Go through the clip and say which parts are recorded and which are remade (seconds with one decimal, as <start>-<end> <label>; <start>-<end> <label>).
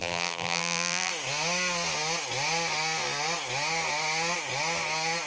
0.0-1.1 remade; 1.1-5.3 recorded